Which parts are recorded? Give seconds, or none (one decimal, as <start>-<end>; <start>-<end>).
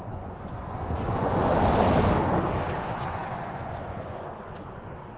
1.5-2.8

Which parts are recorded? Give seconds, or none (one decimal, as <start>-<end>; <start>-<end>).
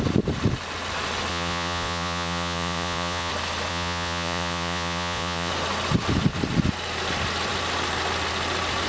0.0-1.3; 3.3-3.7; 5.5-8.9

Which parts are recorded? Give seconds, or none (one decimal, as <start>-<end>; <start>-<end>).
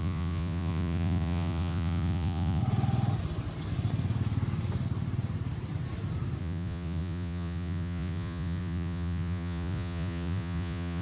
2.6-6.4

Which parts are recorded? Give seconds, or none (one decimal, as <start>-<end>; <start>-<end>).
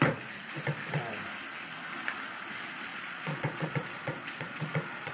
0.0-2.9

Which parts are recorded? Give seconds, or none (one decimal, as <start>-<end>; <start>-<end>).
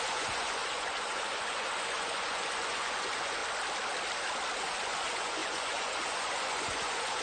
3.4-4.6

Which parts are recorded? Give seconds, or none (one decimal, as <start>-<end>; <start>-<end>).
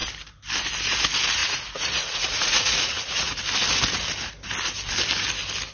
0.0-1.4; 3.4-5.7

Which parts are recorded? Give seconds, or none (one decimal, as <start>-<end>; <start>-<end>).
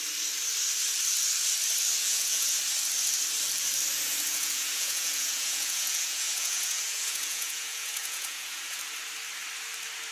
0.0-2.0; 2.6-4.1; 8.8-10.1